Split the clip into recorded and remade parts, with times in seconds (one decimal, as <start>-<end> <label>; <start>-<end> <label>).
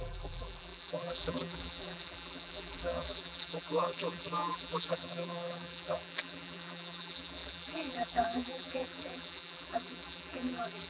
0.0-10.9 remade